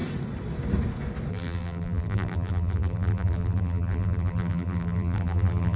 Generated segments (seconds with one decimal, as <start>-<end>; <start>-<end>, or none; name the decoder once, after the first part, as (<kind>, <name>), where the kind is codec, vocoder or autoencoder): 1.3-5.8 (vocoder, BigVGAN v2)